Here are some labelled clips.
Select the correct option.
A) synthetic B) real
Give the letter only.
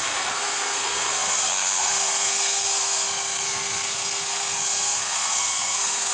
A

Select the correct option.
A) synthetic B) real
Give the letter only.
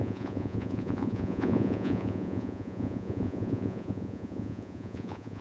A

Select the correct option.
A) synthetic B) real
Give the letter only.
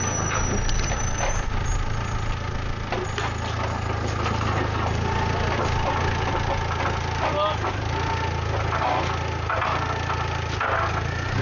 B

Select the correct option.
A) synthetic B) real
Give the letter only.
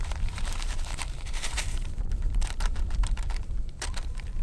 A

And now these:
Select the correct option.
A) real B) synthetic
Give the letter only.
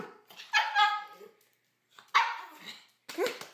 A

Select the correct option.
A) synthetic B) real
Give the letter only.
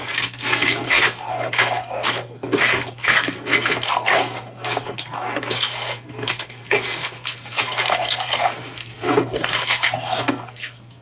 A